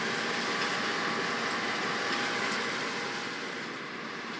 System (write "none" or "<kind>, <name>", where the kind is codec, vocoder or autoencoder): none